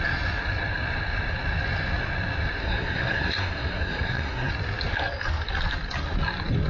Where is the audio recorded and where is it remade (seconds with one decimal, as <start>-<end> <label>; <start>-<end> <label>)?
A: 0.0-2.6 recorded; 2.6-4.5 remade; 4.5-6.7 recorded